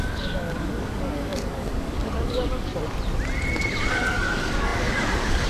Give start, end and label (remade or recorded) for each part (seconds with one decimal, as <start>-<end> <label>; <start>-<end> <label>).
0.0-2.7 remade; 2.7-3.9 recorded; 3.9-5.5 remade